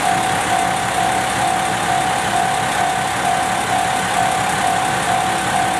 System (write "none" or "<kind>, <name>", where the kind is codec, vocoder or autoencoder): none